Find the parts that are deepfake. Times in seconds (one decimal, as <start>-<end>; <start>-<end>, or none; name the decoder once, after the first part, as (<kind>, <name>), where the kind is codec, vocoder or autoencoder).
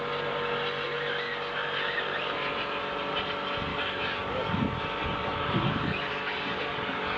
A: 3.7-4.6 (codec, DAC); 5.2-7.2